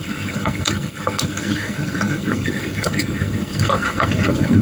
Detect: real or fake fake